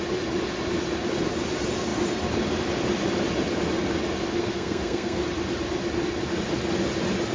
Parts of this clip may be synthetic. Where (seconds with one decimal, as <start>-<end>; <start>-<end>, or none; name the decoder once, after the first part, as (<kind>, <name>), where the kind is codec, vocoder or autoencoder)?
4.4-5.2 (codec, SNAC)